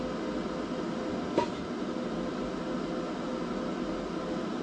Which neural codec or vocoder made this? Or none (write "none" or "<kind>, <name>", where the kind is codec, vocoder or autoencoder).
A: none